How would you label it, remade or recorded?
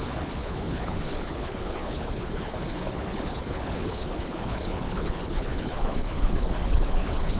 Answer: remade